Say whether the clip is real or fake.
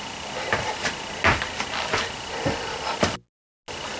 real